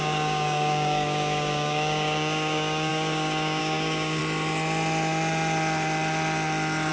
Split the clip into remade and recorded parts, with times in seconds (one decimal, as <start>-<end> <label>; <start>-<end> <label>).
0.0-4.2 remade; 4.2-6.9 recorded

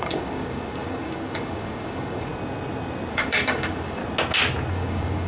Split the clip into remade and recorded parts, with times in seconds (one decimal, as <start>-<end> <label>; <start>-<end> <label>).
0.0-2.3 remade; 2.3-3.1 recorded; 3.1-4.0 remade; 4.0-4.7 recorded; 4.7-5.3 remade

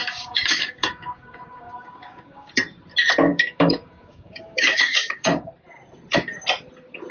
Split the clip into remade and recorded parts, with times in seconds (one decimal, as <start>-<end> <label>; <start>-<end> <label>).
0.0-2.5 remade; 2.5-3.3 recorded; 3.3-5.5 remade; 5.5-7.1 recorded

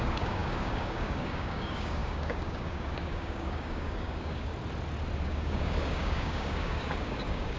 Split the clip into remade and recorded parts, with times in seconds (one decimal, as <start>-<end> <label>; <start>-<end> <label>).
0.0-4.5 remade; 4.5-5.2 recorded; 5.2-7.6 remade